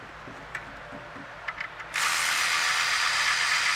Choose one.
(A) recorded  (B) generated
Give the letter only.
A